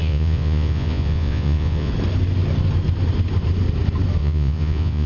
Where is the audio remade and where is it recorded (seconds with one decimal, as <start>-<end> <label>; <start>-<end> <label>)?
0.0-1.9 remade; 1.9-4.2 recorded; 4.2-5.1 remade